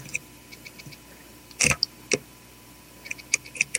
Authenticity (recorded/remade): recorded